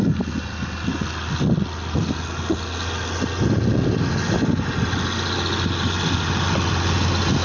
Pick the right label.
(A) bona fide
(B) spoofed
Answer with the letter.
A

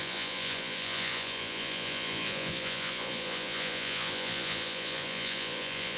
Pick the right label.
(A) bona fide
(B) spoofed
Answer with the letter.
B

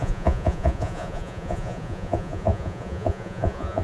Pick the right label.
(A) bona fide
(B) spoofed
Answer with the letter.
B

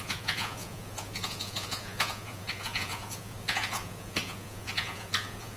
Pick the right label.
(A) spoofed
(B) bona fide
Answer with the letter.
A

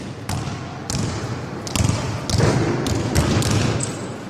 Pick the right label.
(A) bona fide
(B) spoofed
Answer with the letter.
A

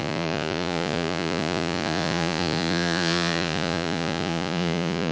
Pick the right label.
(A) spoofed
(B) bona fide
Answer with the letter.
A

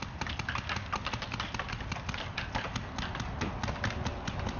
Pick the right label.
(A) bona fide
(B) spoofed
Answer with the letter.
A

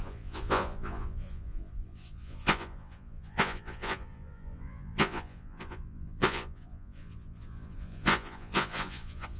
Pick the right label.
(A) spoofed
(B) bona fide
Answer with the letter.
A